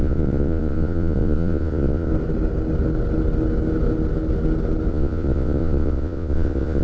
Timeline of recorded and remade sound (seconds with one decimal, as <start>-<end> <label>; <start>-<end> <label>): 0.0-2.1 remade; 2.1-4.9 recorded; 4.9-6.8 remade